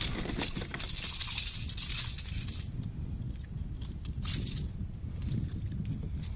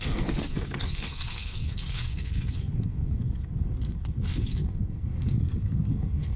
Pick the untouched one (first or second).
first